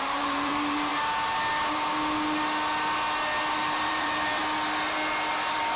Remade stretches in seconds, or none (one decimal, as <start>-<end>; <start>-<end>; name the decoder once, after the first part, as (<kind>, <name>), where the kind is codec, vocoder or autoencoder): 0.0-0.9 (vocoder, BigVGAN v2); 3.5-4.4; 5.3-5.8